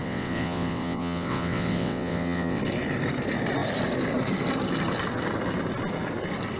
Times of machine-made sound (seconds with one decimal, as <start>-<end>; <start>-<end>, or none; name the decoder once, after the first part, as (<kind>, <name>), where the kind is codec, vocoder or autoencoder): 0.0-2.6 (vocoder, WaveNeXt)